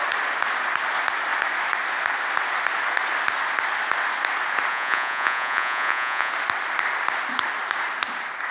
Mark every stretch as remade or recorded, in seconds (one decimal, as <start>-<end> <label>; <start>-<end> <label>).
0.0-4.7 recorded; 4.7-6.3 remade; 6.3-8.5 recorded